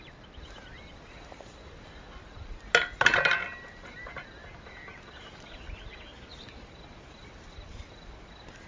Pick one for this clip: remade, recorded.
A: recorded